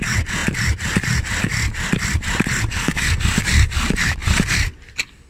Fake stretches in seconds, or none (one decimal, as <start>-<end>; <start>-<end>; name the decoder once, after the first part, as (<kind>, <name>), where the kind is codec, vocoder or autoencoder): 2.7-3.2 (codec, SNAC)